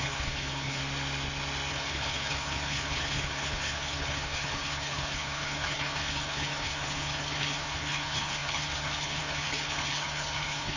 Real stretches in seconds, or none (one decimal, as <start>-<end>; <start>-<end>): 0.8-1.7